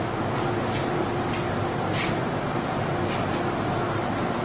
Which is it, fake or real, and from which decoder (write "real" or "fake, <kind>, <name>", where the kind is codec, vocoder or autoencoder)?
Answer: real